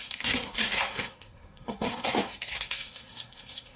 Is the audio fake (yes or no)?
yes